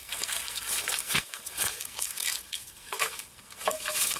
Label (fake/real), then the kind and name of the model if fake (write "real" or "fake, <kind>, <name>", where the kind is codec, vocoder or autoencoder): fake, codec, SNAC